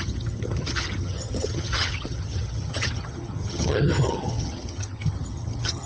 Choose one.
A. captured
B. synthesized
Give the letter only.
B